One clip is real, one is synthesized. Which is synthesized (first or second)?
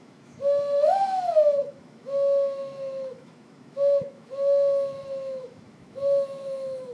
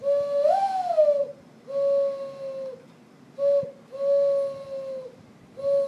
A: first